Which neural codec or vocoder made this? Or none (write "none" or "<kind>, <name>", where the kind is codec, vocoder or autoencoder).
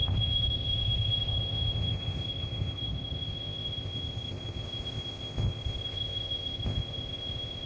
codec, ZipCodec